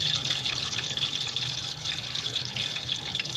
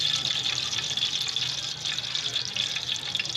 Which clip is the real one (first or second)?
second